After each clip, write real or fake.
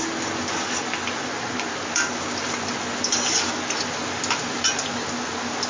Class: real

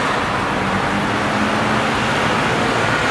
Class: real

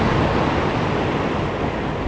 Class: real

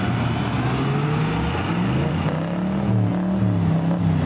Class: real